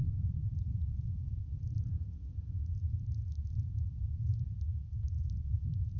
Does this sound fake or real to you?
fake